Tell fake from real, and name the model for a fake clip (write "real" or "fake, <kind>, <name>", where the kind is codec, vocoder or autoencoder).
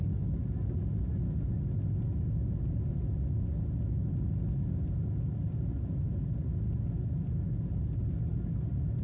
real